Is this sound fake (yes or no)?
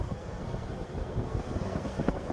yes